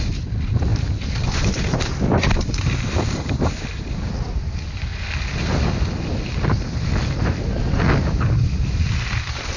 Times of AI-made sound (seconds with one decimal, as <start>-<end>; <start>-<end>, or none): none